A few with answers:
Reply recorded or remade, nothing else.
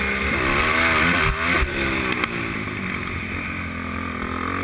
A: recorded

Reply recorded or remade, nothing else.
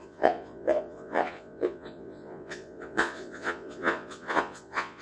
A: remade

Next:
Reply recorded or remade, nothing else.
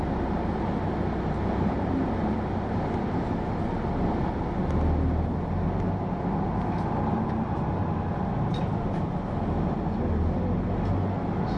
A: recorded